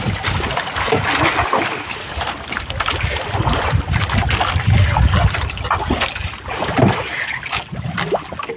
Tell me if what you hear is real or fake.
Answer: real